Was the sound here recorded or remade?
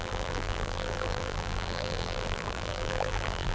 remade